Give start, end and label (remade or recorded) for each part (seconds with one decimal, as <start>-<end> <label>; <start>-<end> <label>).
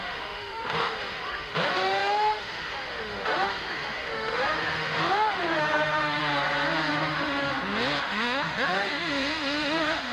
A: 0.0-6.2 remade; 6.2-6.9 recorded; 6.9-7.5 remade; 7.5-8.0 recorded; 8.0-10.1 remade